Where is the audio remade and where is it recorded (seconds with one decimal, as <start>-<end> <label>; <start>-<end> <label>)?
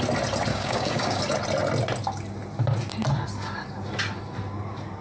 0.0-0.5 recorded; 0.5-1.2 remade; 1.2-5.0 recorded